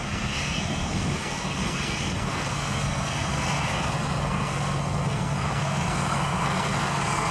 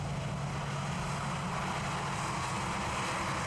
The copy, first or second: first